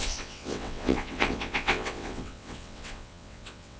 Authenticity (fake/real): fake